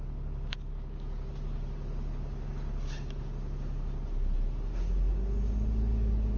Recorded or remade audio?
recorded